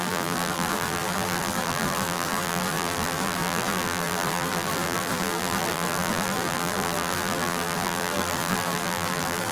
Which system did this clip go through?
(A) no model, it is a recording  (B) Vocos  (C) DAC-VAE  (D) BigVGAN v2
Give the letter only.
D